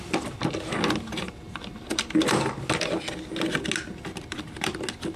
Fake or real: real